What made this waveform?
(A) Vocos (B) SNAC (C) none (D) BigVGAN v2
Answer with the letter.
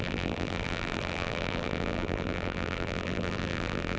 D